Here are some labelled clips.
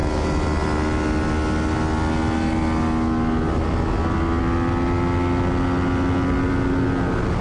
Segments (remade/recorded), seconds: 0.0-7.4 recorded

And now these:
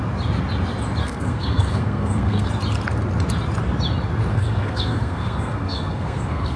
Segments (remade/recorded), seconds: 0.0-1.0 recorded; 1.0-2.5 remade; 2.5-4.3 recorded; 4.3-6.6 remade